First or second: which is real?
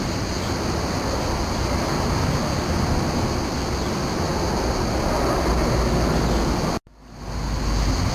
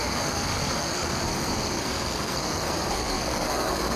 first